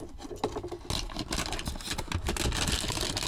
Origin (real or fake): real